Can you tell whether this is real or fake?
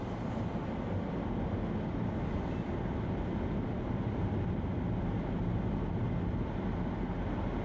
real